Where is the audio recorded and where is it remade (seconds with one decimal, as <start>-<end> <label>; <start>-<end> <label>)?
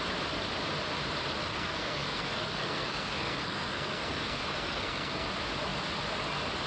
0.0-1.4 recorded; 1.4-5.3 remade; 5.3-6.7 recorded